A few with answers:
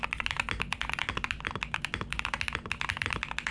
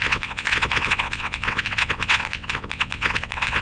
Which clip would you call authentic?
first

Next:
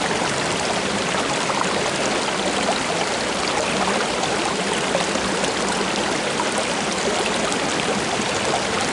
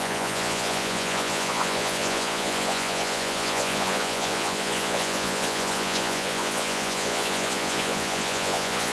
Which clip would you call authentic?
first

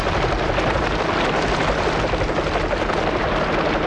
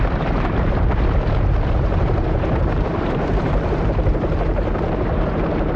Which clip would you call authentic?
first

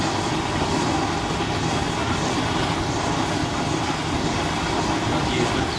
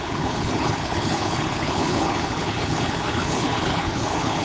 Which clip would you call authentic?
first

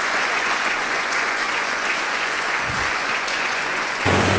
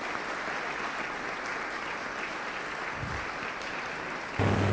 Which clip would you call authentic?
second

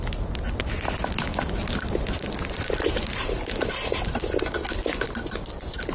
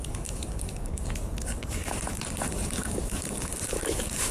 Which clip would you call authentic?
first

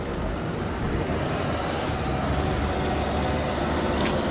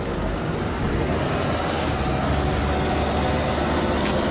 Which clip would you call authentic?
second